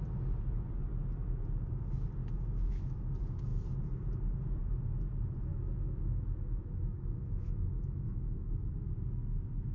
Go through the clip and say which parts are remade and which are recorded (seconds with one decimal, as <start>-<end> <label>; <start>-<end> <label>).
0.0-2.2 recorded; 2.2-3.0 remade; 3.0-5.5 recorded; 5.5-8.7 remade; 8.7-9.7 recorded